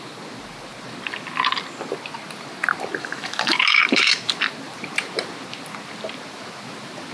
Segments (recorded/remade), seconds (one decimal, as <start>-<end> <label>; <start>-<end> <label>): 0.0-3.0 recorded; 3.0-4.3 remade; 4.3-7.1 recorded